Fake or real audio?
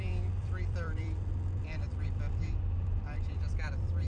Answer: fake